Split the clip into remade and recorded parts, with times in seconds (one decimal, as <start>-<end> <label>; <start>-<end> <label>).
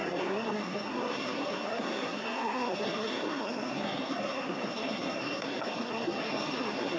0.0-7.0 remade